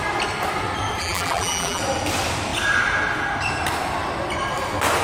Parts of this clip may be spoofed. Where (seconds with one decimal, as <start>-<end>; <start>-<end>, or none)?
1.0-1.8